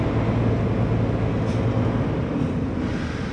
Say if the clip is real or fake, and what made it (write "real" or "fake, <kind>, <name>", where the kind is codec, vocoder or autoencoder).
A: real